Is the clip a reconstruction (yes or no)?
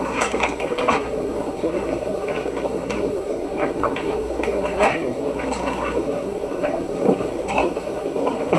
yes